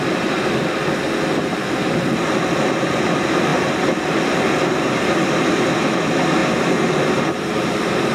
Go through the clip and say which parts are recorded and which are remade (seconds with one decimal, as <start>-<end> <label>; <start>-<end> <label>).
0.0-8.1 recorded